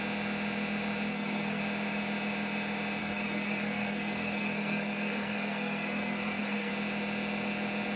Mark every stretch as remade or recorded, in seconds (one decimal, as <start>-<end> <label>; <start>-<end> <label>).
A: 0.0-1.1 recorded; 1.1-1.6 remade; 1.6-3.0 recorded; 3.0-6.7 remade; 6.7-8.0 recorded